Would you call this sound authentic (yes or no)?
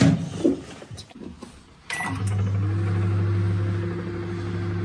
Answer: yes